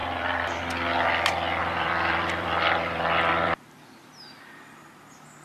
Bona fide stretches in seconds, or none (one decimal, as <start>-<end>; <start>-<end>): 0.6-1.6; 4.7-5.4